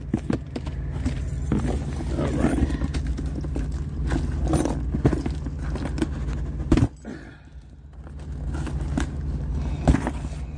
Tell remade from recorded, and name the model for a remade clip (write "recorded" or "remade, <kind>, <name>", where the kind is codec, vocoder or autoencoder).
recorded